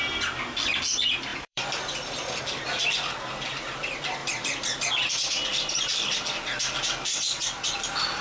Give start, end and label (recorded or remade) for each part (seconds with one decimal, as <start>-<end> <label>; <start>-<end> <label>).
0.0-1.3 recorded; 1.3-2.4 remade; 2.4-4.2 recorded; 4.2-4.9 remade; 4.9-8.2 recorded

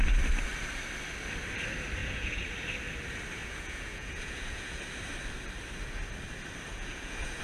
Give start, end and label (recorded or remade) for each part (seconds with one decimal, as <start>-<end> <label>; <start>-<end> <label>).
0.0-2.0 recorded; 2.0-2.5 remade; 2.5-3.4 recorded; 3.4-4.8 remade; 4.8-6.7 recorded; 6.7-7.4 remade

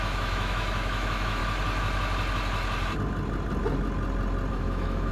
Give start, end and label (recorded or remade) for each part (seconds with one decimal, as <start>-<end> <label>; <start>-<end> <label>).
0.0-1.4 remade; 1.4-4.5 recorded; 4.5-5.1 remade

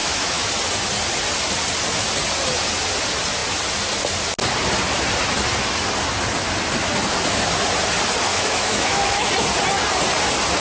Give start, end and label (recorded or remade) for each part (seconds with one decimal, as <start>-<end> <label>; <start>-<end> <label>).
0.0-0.5 remade; 0.5-8.3 recorded; 8.3-9.3 remade; 9.3-10.6 recorded

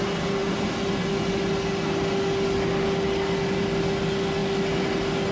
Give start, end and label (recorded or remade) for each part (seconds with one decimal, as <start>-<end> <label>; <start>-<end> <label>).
0.0-5.3 recorded

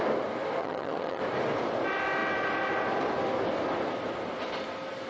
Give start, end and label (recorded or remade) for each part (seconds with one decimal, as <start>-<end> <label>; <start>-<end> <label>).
0.0-0.6 recorded; 0.6-1.2 remade; 1.2-5.1 recorded

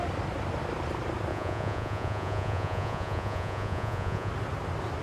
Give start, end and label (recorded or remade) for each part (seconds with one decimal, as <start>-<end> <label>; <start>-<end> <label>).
0.0-1.3 recorded; 1.3-4.3 remade; 4.3-5.0 recorded